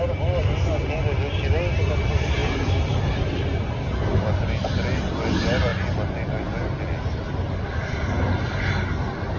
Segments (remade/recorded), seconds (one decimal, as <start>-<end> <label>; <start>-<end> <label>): 0.0-9.4 recorded